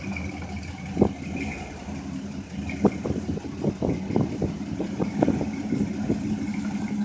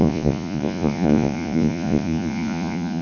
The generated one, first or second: second